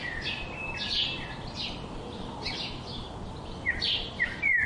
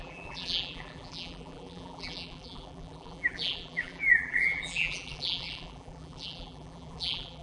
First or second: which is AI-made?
second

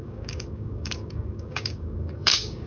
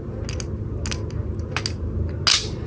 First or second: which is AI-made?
first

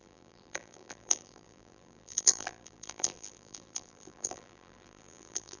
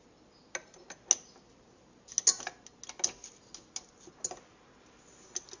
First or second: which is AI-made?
first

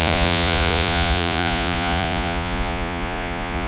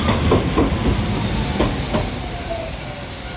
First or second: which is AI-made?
first